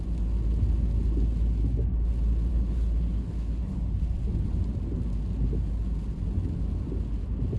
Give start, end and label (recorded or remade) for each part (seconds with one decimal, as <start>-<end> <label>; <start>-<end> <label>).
0.0-2.5 recorded; 2.5-4.0 remade; 4.0-7.6 recorded